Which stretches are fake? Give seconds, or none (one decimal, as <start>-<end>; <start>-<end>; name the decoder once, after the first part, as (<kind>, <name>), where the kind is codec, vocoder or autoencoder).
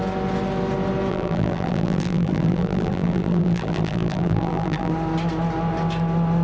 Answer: 1.1-4.9 (vocoder, BigVGAN v2)